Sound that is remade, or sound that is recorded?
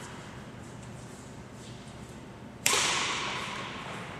remade